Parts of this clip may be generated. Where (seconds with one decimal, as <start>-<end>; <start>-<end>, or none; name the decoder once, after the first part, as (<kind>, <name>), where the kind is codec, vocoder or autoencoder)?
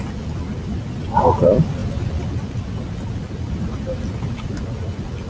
none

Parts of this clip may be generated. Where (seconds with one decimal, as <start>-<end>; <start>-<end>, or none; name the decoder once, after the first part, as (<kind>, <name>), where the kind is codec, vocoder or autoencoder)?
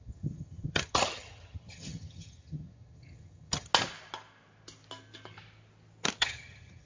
0.0-3.7 (vocoder, HiFi-GAN); 6.2-6.9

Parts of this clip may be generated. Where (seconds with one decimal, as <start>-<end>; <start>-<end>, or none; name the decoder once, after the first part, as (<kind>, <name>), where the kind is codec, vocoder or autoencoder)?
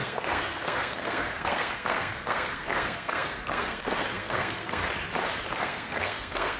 0.0-4.8 (codec, SNAC); 5.5-6.6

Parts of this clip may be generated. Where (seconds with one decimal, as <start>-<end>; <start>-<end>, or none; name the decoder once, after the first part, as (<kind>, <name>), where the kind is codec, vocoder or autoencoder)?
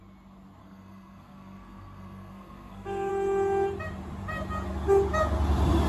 0.6-3.1 (codec, SNAC)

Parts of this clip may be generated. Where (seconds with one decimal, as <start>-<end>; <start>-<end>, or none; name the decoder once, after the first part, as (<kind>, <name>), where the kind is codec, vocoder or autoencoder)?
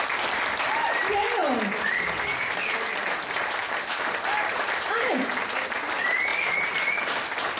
none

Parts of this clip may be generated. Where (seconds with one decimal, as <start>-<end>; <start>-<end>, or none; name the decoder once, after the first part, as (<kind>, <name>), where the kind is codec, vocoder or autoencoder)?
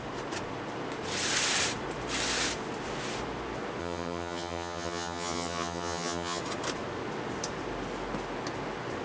3.8-6.4 (vocoder, HiFi-GAN)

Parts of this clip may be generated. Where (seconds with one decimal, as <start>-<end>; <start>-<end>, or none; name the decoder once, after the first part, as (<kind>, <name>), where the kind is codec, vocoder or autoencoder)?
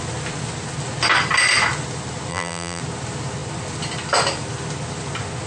2.3-2.8 (vocoder, BigVGAN v2)